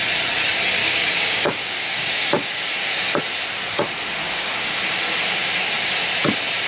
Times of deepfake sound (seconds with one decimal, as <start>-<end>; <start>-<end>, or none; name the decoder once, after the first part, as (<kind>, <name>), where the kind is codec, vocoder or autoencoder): 0.8-3.2 (codec, DAC); 4.2-4.8